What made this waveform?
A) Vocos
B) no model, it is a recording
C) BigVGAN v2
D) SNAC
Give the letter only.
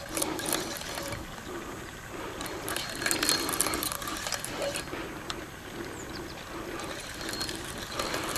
C